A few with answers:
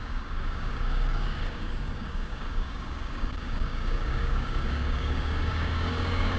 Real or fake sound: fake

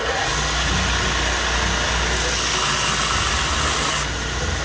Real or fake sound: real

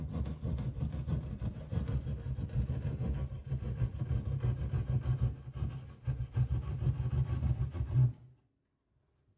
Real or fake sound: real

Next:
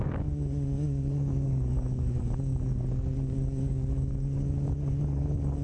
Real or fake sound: fake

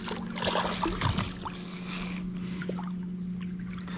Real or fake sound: real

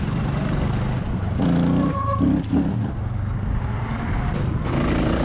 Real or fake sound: real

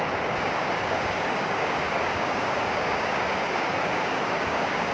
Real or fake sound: fake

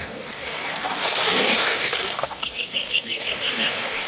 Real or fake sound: fake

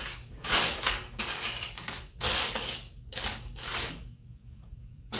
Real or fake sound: fake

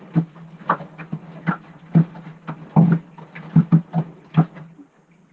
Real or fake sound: real